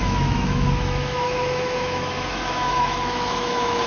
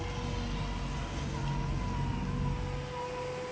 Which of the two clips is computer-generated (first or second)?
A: first